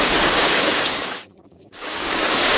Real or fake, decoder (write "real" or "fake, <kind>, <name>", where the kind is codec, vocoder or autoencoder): fake, codec, DAC